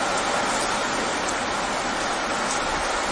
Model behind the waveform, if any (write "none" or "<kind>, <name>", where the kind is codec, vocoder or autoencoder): none